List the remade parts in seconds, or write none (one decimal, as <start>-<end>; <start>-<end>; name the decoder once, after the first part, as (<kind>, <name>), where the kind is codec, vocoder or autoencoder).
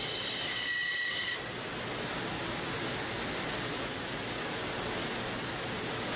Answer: none